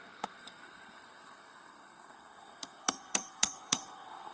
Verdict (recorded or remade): remade